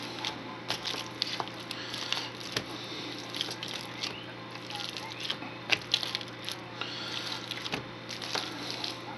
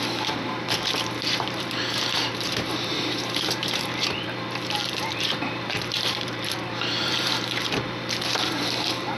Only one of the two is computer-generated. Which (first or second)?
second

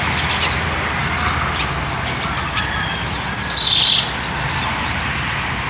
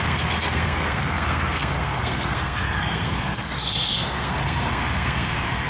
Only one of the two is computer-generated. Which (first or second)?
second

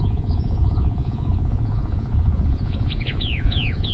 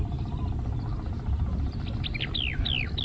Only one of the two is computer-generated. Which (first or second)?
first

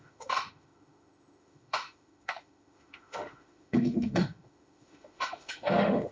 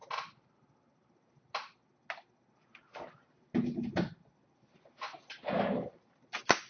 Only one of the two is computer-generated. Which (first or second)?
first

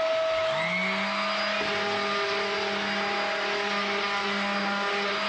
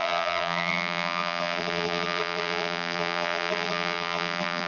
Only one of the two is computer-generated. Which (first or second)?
second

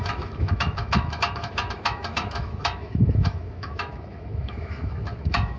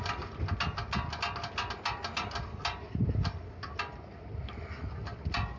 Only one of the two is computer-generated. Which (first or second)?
first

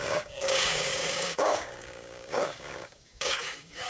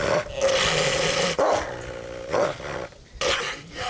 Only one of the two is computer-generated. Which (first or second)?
first